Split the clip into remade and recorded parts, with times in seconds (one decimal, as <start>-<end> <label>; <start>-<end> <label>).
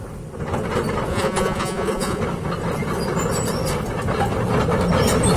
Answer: 0.0-1.1 recorded; 1.1-2.2 remade; 2.2-5.4 recorded